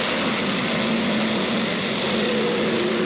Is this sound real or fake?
real